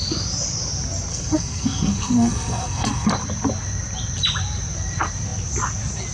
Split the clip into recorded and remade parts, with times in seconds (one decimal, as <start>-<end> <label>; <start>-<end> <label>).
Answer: 0.0-1.1 recorded; 1.1-3.1 remade; 3.1-6.1 recorded